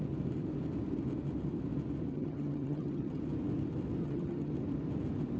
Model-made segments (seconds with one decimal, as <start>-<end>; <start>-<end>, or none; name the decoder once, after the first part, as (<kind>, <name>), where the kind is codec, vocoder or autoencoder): 2.1-3.2 (vocoder, HiFi-GAN); 4.0-4.5